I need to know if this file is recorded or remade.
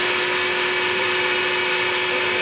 remade